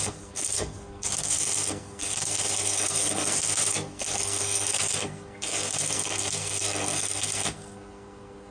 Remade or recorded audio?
remade